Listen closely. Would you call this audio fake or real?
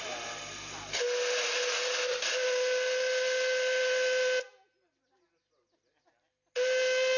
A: real